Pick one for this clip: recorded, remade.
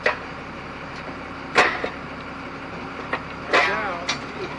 recorded